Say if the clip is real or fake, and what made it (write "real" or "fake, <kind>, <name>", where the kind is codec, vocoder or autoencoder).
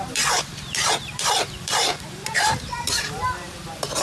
fake, vocoder, BigVGAN v2